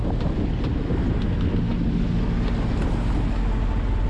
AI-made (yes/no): no